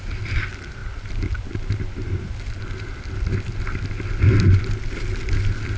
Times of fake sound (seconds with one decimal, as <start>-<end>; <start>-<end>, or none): none